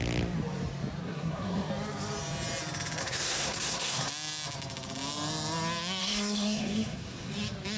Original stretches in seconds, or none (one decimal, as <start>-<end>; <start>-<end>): 0.0-1.0; 1.7-3.0; 4.1-6.0; 7.3-7.8